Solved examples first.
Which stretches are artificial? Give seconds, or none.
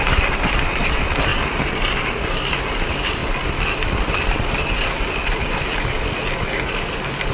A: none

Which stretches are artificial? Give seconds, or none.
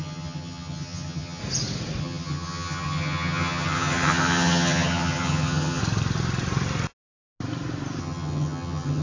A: 0.0-1.4 (vocoder, HiFi-GAN); 2.0-5.8; 8.0-9.0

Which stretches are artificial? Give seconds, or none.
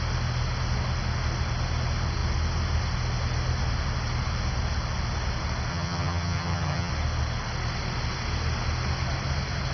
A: 5.7-6.9 (vocoder, HiFi-GAN)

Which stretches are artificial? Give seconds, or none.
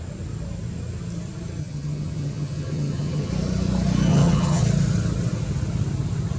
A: 1.6-3.3 (vocoder, HiFi-GAN); 4.1-4.6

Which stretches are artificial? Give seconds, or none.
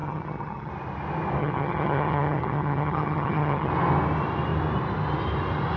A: 0.0-0.7 (vocoder, HiFi-GAN); 1.4-3.7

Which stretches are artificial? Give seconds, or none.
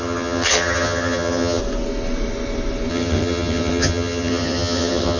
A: 0.0-1.6 (vocoder, HiFi-GAN); 2.9-5.2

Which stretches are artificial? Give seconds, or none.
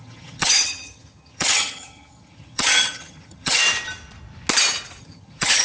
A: 0.0-3.6 (vocoder, HiFi-GAN); 5.0-5.6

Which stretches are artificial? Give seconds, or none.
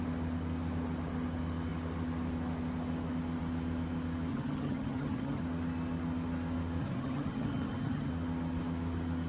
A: 4.3-5.4 (vocoder, HiFi-GAN); 6.8-8.1